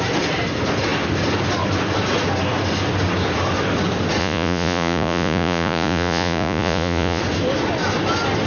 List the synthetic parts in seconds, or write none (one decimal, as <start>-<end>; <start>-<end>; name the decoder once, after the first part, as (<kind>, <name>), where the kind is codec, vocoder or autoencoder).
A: 4.2-7.2 (vocoder, Vocos)